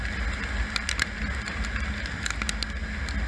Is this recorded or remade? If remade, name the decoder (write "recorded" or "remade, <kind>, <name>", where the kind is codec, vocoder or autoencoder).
recorded